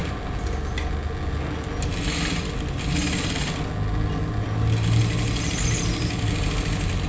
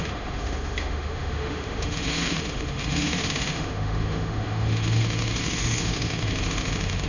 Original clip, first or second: first